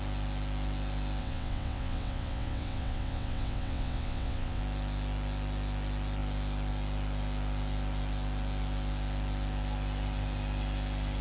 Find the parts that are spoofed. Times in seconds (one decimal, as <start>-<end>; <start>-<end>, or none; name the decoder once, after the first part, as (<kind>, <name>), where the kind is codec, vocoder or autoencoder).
1.2-4.6 (vocoder, WaveNeXt)